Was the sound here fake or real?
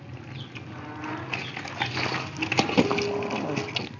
real